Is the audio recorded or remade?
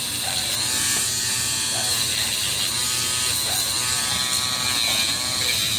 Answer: recorded